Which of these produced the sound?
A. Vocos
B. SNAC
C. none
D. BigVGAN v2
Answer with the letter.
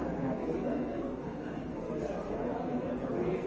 B